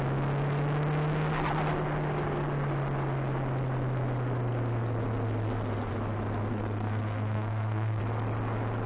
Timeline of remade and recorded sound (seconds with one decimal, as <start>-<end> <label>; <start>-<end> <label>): 0.0-6.5 recorded; 6.5-8.0 remade; 8.0-8.9 recorded